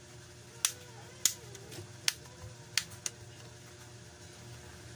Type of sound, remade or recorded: recorded